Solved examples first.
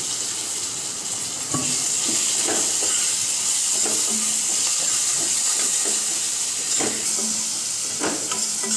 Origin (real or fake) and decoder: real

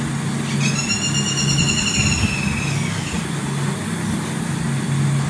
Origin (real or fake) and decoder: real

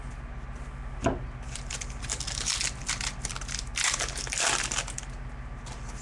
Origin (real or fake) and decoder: real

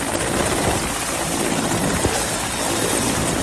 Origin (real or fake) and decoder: real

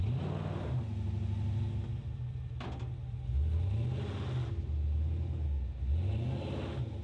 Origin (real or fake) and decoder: real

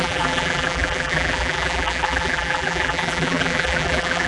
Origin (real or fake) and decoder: fake, vocoder, BigVGAN v2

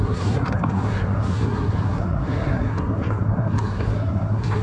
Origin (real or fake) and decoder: fake, codec, SNAC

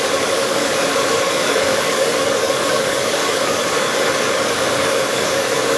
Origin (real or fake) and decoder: fake, codec, DAC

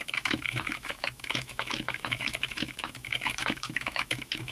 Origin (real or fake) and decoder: fake, autoencoder, DAC-VAE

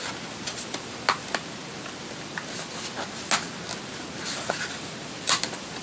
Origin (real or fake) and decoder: real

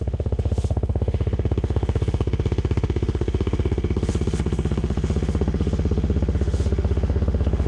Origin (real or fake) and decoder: fake, autoencoder, DAC-VAE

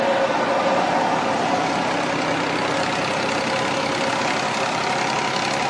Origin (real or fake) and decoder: real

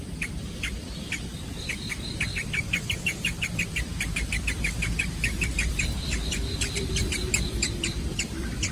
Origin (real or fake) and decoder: fake, vocoder, BigVGAN v2